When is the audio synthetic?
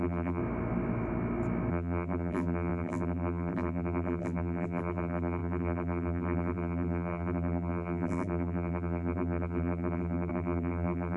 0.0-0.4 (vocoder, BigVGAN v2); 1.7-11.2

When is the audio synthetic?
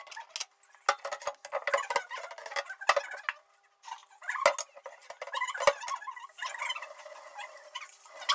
none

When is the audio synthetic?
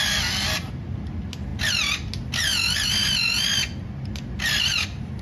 none